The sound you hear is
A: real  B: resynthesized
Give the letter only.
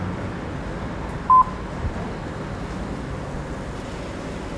A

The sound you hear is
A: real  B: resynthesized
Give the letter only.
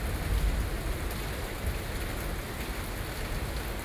A